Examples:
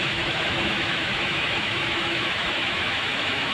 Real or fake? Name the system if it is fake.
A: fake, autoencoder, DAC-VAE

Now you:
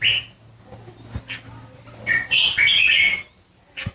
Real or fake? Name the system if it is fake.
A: real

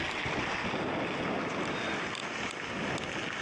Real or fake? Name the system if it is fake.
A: real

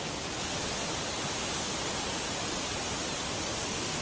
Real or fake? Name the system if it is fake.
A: real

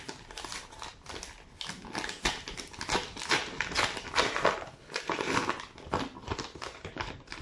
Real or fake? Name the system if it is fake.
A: real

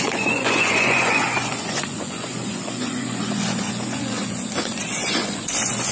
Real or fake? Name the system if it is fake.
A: fake, vocoder, Vocos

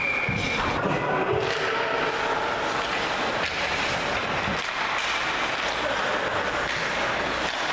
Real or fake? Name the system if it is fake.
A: real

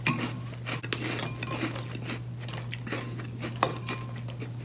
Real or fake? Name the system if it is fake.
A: real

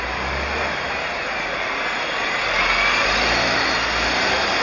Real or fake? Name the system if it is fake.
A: real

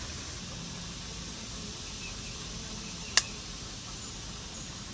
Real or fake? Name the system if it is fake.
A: real